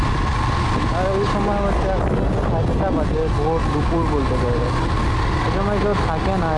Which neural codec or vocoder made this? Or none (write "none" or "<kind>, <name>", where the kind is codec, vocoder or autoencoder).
none